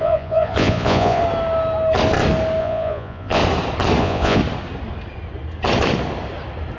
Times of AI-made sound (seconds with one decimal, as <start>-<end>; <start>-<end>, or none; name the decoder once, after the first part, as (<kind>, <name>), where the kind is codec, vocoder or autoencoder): 0.0-1.2 (vocoder, Vocos); 2.6-3.4; 4.0-4.4